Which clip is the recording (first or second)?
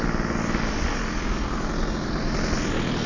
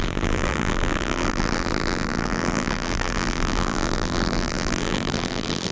first